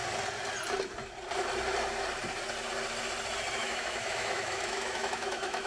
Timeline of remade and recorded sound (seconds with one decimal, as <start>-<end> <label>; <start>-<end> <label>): 0.0-3.6 recorded; 3.6-5.7 remade